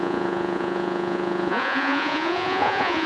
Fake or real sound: fake